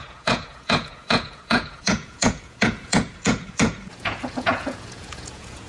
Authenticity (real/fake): fake